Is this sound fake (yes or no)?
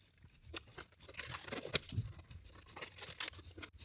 no